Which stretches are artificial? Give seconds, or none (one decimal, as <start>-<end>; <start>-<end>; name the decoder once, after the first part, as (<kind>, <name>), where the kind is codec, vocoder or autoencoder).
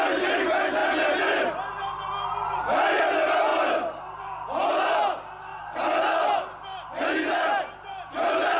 none